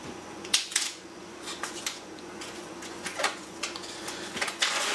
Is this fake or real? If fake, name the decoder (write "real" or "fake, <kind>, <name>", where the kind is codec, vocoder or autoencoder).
fake, vocoder, Vocos